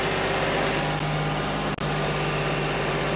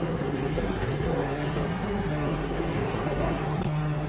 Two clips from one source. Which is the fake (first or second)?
second